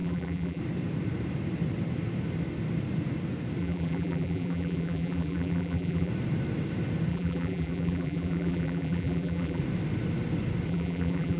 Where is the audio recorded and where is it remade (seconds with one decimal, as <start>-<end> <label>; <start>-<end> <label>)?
0.0-0.6 remade; 0.6-3.6 recorded; 3.6-6.1 remade; 6.1-7.1 recorded; 7.1-9.6 remade; 9.6-10.7 recorded; 10.7-11.4 remade